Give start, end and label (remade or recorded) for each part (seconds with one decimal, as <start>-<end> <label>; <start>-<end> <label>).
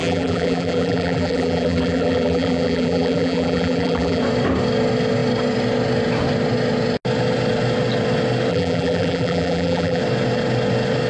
0.0-4.2 remade; 4.2-8.5 recorded; 8.5-10.0 remade; 10.0-11.1 recorded